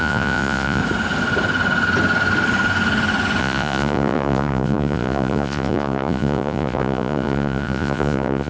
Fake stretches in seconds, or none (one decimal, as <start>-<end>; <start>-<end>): 0.0-0.8; 3.4-8.5